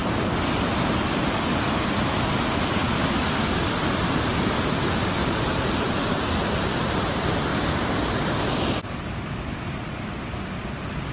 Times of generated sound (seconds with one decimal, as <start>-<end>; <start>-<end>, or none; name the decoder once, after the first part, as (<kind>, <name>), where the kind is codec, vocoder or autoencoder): 0.0-0.7 (vocoder, BigVGAN v2); 4.3-6.4; 7.5-8.3